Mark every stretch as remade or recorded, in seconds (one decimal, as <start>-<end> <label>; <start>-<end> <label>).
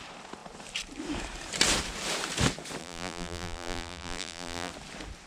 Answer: 0.0-2.8 recorded; 2.8-4.7 remade; 4.7-5.3 recorded